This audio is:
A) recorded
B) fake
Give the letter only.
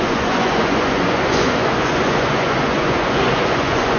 B